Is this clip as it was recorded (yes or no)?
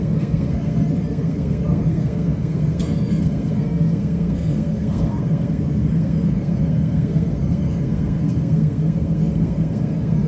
no